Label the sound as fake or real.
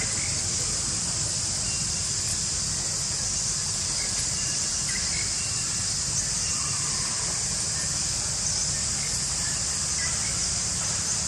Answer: real